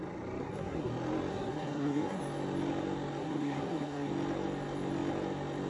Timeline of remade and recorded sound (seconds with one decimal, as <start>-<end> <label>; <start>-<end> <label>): 0.0-0.4 recorded; 0.4-0.9 remade; 0.9-1.3 recorded; 1.3-2.2 remade; 2.2-3.2 recorded; 3.2-4.1 remade; 4.1-5.7 recorded